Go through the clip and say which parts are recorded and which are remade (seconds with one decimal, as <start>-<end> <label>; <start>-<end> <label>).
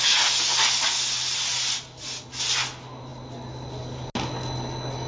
0.0-5.1 recorded